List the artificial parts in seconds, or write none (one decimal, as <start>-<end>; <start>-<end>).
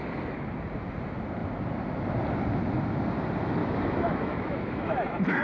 3.6-5.4